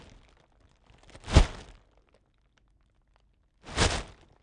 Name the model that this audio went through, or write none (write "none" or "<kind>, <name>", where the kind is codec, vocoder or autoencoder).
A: none